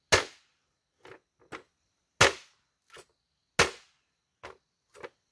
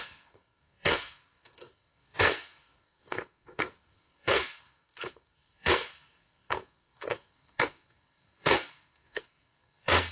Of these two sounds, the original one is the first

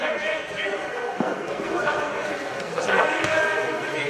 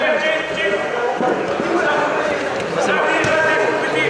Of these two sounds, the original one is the second